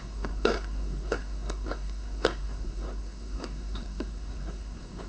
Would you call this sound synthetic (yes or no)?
yes